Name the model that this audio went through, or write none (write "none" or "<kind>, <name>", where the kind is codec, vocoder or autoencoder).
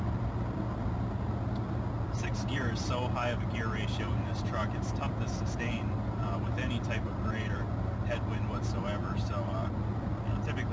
none